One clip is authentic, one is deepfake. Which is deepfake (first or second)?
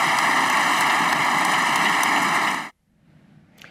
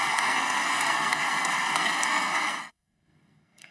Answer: second